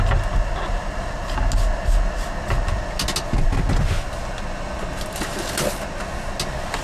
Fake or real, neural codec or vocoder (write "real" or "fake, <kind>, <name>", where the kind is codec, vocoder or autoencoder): real